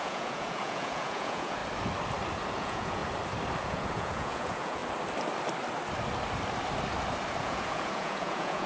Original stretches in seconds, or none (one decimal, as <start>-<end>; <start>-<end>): 1.6-2.5; 3.0-3.6; 4.8-7.4